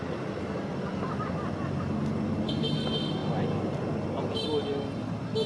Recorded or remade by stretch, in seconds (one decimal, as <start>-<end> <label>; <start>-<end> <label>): 0.0-5.5 recorded